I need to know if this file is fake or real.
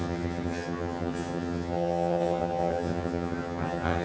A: fake